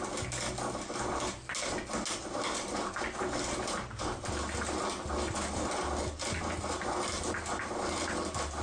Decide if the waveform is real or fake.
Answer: real